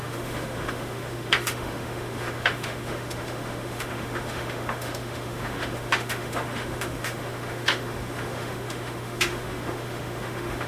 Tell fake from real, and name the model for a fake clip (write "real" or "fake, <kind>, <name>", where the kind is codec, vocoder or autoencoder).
fake, autoencoder, DAC-VAE